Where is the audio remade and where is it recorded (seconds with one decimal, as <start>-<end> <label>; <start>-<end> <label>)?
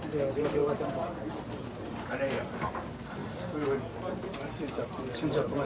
0.0-3.2 remade; 3.2-4.1 recorded; 4.1-5.7 remade